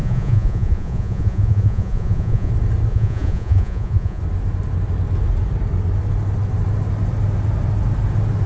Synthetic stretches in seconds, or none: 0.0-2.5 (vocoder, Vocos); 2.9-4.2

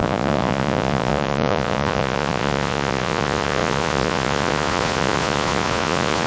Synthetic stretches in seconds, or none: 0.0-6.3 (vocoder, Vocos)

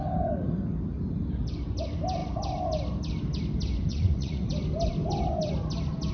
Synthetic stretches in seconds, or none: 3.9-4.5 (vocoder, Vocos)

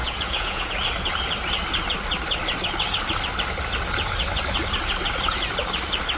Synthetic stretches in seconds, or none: 0.0-0.7 (vocoder, Vocos)

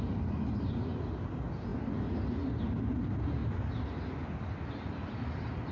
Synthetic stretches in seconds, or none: none

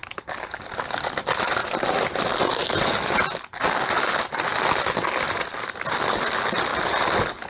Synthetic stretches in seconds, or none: none